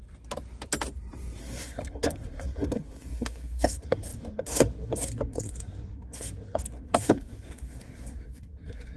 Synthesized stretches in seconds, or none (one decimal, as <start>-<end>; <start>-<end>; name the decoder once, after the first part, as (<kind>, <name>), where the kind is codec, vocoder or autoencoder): 1.4-9.0 (codec, SNAC)